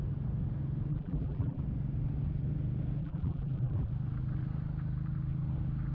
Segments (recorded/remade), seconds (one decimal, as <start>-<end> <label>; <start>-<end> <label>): 0.0-0.9 recorded; 0.9-1.6 remade; 1.6-3.0 recorded; 3.0-3.9 remade; 3.9-5.9 recorded